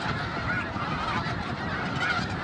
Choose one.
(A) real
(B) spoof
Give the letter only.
A